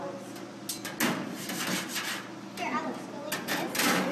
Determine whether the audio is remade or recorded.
recorded